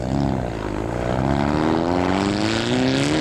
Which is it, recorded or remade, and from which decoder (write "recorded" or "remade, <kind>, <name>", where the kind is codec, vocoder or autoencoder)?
recorded